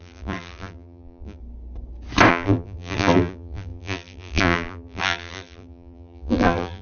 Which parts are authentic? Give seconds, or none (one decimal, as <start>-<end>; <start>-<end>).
1.4-2.3